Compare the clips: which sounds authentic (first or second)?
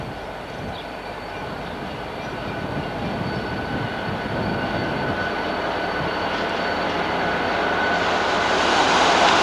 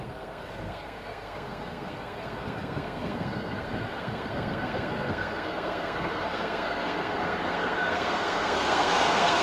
first